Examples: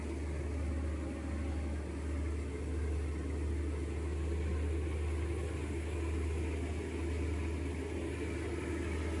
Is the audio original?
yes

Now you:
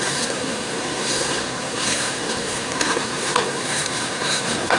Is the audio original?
no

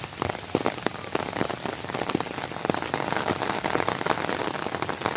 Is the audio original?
yes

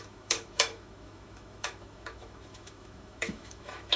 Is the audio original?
no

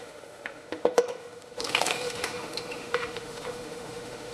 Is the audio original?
no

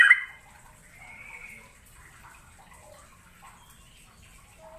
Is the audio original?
yes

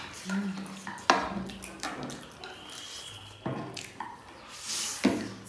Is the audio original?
yes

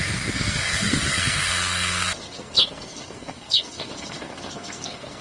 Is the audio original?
no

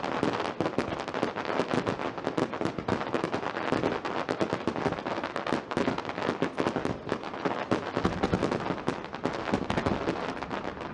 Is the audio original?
yes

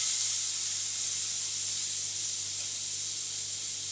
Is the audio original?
yes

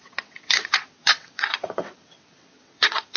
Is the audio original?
no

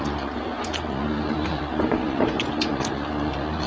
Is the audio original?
no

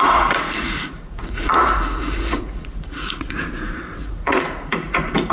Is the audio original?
no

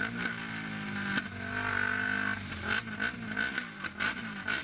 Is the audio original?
yes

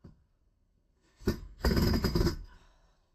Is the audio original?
no